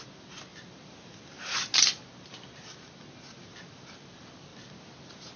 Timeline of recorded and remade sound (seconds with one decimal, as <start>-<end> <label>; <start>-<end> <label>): 0.0-5.4 recorded